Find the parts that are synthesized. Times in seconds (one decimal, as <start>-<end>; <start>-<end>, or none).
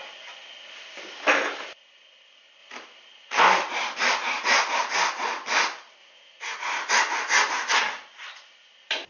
6.0-6.9